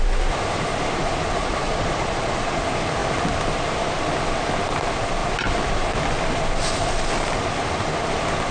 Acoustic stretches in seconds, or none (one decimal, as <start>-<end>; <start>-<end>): 0.0-1.4; 2.6-8.5

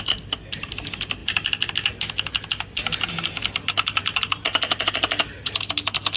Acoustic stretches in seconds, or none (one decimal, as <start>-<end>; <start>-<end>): 0.0-6.2

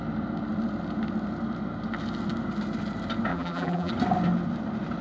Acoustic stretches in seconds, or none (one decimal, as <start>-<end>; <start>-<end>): 0.0-3.3; 3.9-5.0

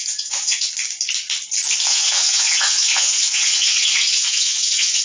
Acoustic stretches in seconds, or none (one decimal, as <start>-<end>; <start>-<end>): 0.7-1.9